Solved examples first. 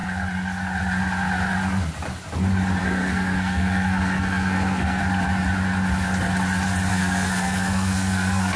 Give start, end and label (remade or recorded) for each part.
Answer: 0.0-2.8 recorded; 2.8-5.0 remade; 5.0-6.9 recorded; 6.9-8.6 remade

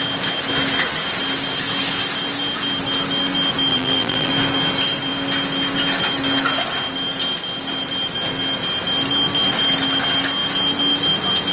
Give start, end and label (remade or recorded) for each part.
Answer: 0.0-3.7 recorded; 3.7-4.3 remade; 4.3-11.5 recorded

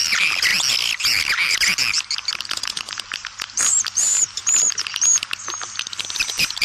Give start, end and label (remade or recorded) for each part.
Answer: 0.0-0.5 remade; 0.5-2.3 recorded; 2.3-6.6 remade

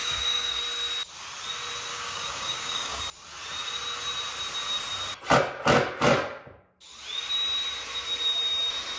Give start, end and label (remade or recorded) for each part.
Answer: 0.0-0.6 remade; 0.6-1.9 recorded; 1.9-3.0 remade; 3.0-9.0 recorded

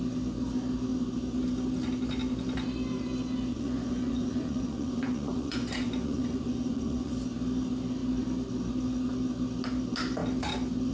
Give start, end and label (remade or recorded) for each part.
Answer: 0.0-3.5 recorded; 3.5-7.1 remade; 7.1-10.9 recorded

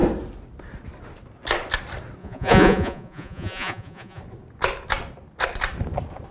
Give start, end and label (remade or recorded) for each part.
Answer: 0.0-2.2 recorded; 2.2-4.2 remade; 4.2-6.3 recorded

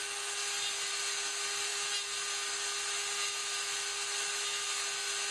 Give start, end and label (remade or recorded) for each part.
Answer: 0.0-5.3 recorded

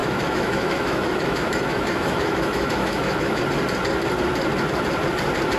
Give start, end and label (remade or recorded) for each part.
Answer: 0.0-3.4 remade; 3.4-5.6 recorded